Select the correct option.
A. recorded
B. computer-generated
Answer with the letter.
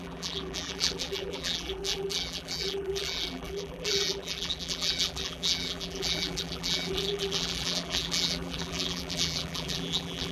B